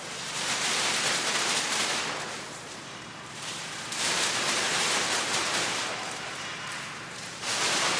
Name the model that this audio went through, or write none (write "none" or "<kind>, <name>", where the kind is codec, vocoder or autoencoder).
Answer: vocoder, BigVGAN v2